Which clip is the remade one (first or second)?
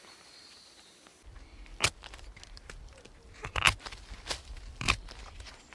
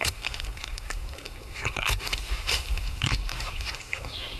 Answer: second